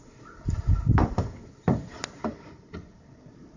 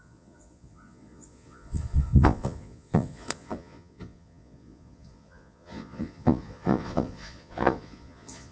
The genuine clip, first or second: first